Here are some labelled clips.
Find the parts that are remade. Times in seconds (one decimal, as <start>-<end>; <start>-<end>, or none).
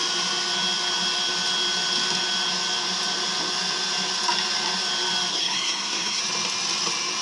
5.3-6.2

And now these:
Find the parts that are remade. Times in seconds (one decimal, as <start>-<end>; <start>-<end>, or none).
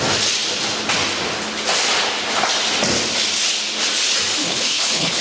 4.4-5.2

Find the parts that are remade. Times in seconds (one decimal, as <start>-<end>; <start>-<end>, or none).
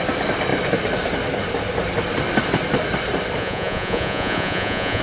3.4-5.0